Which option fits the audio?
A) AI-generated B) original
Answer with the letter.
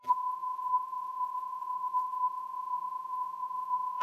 A